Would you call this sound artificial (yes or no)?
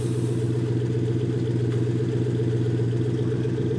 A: no